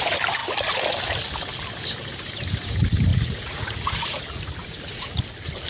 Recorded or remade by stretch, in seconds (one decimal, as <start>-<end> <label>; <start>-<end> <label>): 0.0-3.1 recorded; 3.1-5.2 remade; 5.2-5.7 recorded